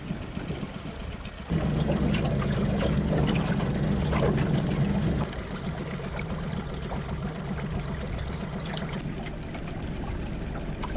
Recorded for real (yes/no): yes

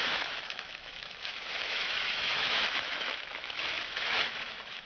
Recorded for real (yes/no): no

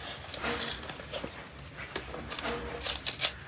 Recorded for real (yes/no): yes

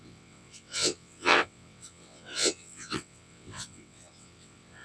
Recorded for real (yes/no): no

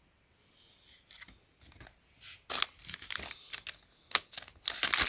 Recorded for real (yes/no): yes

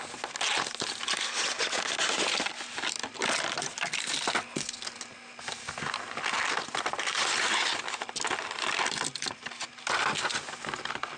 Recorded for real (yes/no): yes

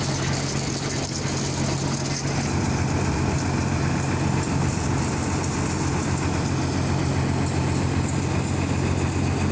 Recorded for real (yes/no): yes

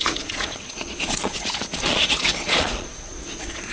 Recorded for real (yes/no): no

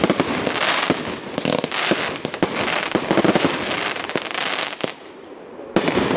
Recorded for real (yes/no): yes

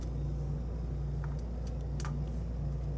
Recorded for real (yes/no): yes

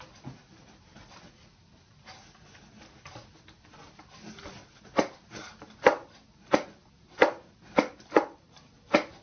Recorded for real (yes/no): yes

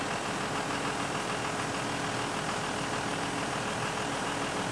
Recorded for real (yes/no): yes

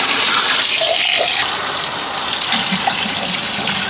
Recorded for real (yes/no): yes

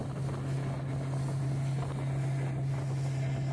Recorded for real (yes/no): yes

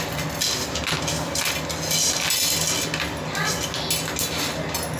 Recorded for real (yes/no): yes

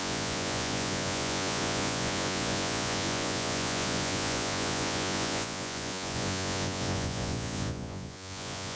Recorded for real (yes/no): no